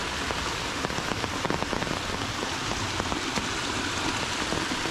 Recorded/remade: recorded